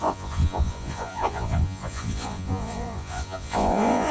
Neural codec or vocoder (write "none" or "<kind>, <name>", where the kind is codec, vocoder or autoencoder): vocoder, Vocos